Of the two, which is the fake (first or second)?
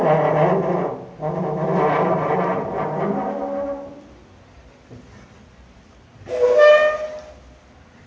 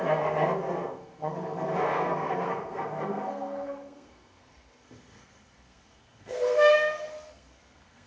second